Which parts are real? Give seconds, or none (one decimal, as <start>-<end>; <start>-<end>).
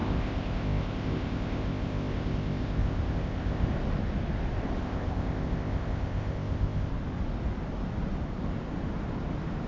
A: 3.7-4.8; 6.9-9.7